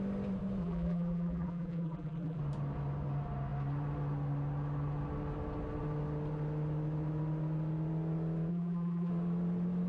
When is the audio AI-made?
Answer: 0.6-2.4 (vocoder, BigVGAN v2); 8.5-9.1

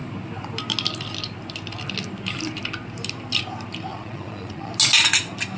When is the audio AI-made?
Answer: 3.9-4.7 (vocoder, Vocos)